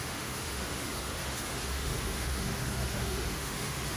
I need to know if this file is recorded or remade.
remade